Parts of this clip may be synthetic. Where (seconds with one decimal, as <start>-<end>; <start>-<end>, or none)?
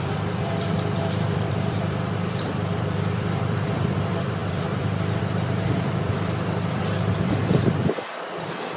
0.0-8.8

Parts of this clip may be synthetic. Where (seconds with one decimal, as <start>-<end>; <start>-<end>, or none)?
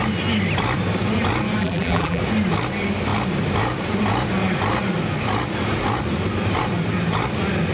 1.6-2.2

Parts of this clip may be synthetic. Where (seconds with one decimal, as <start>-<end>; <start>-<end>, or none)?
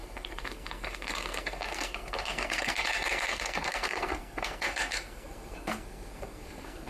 0.0-6.9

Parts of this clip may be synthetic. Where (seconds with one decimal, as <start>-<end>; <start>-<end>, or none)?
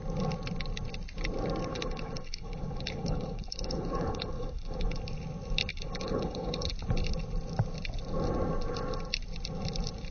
1.7-5.0; 5.7-6.7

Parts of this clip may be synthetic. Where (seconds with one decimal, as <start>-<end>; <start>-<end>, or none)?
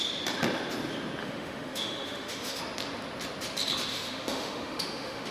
1.2-2.6; 3.9-5.3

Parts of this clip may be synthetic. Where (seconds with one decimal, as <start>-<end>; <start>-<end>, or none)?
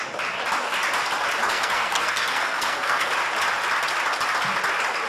1.4-3.1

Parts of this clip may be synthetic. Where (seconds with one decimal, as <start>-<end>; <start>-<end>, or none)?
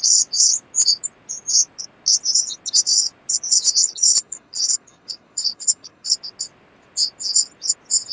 3.8-6.1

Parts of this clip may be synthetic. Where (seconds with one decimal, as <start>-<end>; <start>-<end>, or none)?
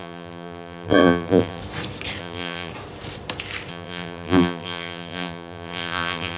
0.0-1.6; 2.2-2.7; 3.7-6.4